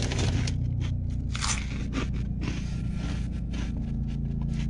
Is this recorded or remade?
recorded